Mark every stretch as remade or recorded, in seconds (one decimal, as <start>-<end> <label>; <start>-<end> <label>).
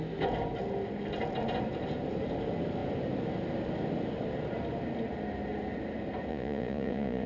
0.0-6.3 recorded; 6.3-7.3 remade